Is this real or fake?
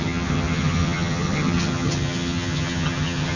fake